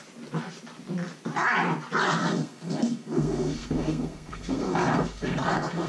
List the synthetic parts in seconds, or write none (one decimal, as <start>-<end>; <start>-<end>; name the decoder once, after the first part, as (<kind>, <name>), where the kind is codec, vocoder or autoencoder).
2.2-5.9 (codec, SNAC)